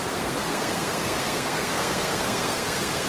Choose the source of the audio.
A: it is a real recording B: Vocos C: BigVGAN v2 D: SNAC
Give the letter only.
D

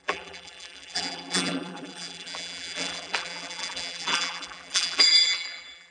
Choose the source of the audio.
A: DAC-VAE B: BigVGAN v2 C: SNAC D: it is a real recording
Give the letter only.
B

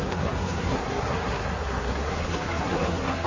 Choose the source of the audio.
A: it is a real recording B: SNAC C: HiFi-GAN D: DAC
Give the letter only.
B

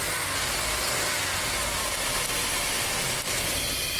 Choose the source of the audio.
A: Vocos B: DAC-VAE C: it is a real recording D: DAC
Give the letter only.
C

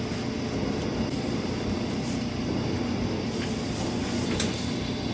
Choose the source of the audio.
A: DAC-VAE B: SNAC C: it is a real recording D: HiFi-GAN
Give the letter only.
C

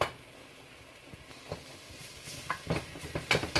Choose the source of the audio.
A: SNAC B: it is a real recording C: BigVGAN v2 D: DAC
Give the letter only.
B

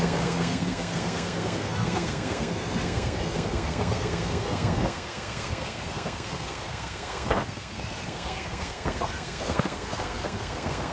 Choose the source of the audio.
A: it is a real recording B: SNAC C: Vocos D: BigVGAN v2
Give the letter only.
B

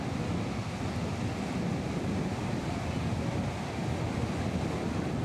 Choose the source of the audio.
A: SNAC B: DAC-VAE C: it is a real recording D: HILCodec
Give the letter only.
C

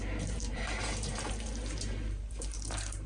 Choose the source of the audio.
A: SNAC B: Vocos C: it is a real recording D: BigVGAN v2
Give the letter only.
D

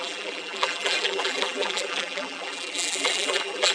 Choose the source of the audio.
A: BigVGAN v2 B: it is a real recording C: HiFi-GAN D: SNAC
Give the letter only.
A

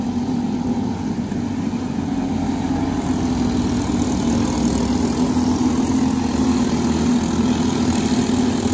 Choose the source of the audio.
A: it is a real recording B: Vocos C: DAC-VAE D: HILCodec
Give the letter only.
A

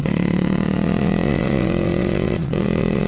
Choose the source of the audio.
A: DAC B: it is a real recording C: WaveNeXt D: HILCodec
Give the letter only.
C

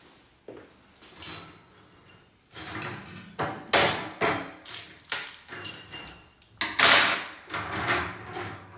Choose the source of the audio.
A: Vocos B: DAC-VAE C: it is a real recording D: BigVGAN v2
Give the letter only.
C